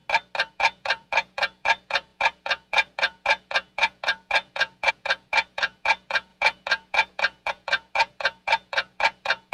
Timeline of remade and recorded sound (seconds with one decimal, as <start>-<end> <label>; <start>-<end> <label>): 0.0-0.5 recorded; 0.5-9.5 remade